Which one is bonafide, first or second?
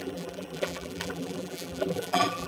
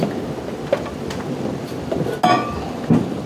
second